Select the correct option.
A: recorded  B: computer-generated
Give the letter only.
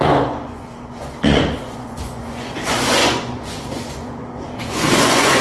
B